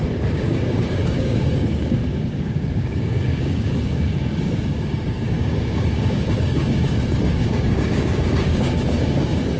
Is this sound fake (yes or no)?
yes